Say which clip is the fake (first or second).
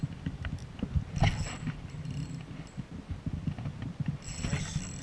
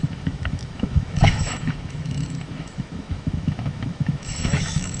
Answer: second